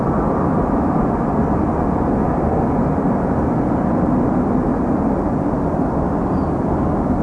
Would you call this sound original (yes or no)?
yes